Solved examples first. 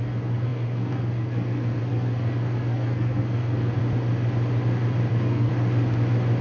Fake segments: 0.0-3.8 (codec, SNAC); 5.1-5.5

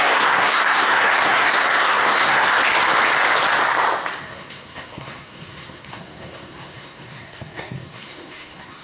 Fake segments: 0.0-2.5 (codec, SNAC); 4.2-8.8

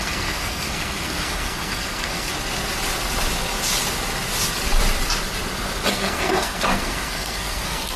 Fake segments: 0.0-2.3 (codec, SNAC); 5.9-8.0